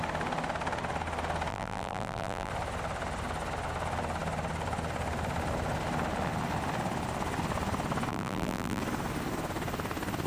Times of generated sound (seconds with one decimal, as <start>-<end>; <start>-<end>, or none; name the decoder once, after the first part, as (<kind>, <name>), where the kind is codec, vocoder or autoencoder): 1.5-2.5 (vocoder, BigVGAN v2); 8.1-8.8